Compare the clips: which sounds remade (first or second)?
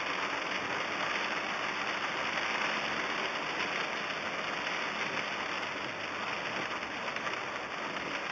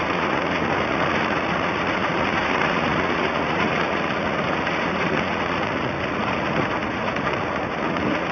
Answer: second